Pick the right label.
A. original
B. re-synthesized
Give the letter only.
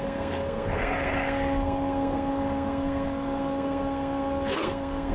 B